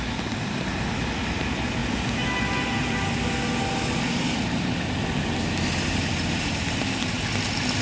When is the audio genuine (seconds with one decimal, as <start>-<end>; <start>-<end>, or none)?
0.0-7.8